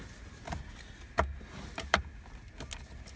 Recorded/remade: recorded